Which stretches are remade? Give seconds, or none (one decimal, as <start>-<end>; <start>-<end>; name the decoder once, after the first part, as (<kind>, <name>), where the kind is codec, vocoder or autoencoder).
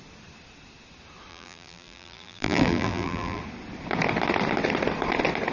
1.3-3.4 (vocoder, BigVGAN v2)